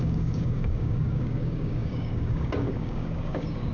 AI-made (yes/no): yes